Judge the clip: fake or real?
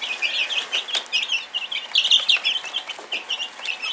real